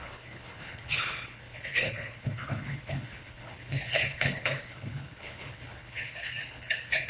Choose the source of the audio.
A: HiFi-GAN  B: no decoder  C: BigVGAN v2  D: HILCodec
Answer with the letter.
D